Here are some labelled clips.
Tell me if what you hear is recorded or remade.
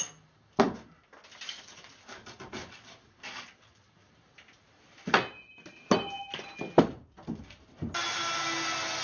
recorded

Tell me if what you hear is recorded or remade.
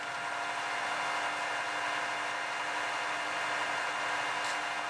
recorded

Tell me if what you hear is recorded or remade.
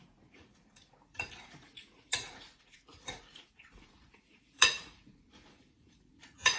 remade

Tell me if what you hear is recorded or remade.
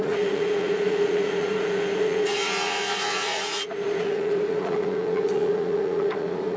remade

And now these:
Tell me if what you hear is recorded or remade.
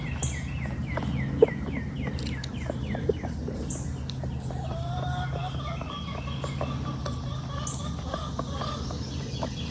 recorded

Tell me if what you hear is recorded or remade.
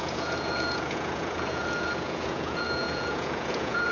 remade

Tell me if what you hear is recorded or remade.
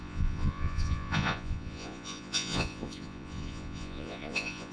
remade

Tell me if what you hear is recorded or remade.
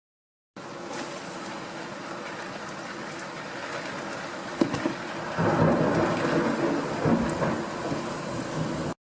recorded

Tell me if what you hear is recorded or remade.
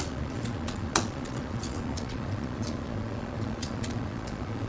remade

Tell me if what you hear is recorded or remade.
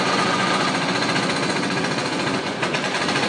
remade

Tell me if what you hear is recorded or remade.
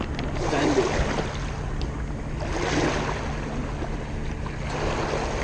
recorded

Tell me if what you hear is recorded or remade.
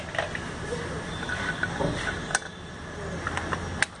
recorded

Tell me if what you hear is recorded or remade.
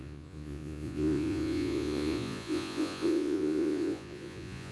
remade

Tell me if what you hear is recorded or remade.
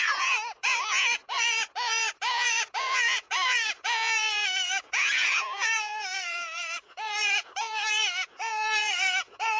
remade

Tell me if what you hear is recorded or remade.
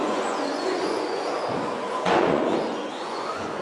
remade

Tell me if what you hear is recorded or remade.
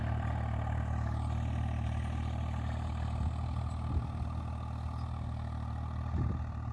recorded